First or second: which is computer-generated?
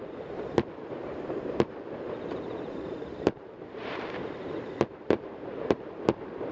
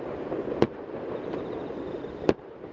first